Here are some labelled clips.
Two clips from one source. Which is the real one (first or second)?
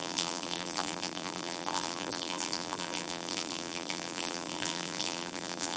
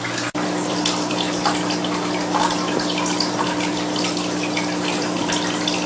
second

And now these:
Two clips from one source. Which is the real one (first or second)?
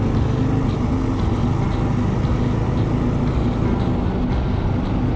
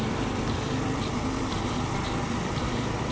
first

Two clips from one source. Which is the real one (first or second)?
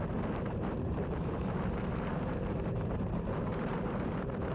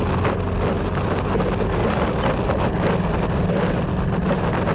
second